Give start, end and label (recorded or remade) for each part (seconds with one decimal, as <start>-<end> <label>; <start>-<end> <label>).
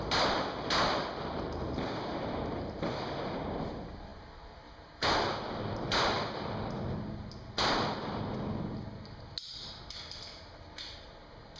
0.0-11.6 recorded